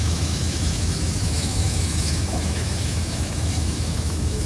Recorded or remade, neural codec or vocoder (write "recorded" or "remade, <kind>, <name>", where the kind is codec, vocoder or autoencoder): remade, autoencoder, DAC-VAE